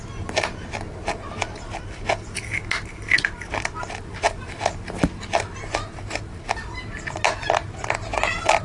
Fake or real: real